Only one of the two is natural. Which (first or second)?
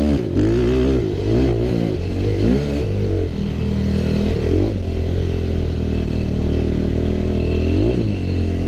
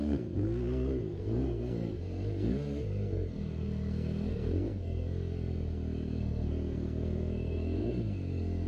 first